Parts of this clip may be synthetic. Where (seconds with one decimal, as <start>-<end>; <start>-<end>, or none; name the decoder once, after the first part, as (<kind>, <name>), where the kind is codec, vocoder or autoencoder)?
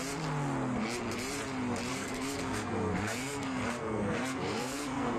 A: 1.9-5.2 (codec, SNAC)